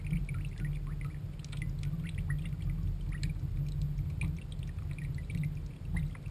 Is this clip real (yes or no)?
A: yes